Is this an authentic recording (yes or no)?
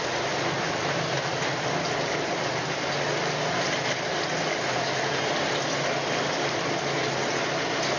yes